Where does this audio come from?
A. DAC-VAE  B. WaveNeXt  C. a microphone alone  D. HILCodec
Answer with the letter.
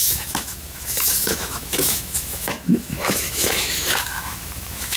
A